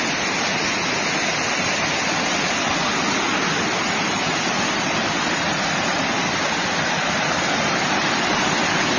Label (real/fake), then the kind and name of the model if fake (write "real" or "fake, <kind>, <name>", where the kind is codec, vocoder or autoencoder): real